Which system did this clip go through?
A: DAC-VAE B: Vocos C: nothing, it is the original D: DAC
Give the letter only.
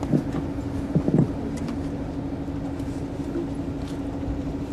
C